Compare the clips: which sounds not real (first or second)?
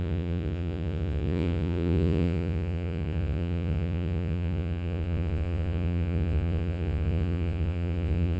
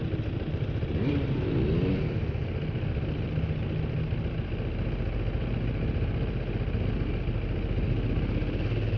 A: first